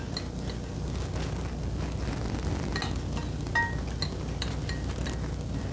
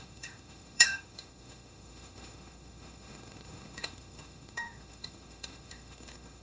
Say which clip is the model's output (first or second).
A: second